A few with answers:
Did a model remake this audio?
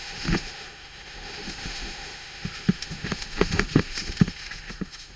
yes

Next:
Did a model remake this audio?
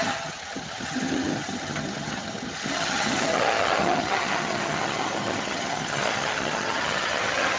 yes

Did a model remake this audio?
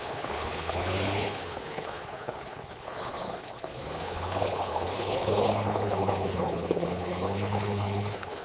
yes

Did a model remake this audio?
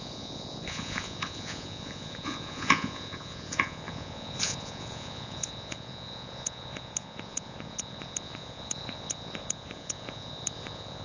yes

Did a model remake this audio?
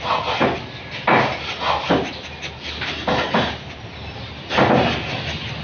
no